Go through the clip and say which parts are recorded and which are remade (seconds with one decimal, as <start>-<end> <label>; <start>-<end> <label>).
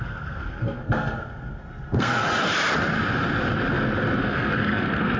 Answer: 0.0-2.2 remade; 2.2-4.2 recorded; 4.2-5.2 remade